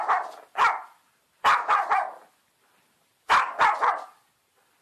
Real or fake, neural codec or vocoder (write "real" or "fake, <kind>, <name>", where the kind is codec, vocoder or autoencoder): real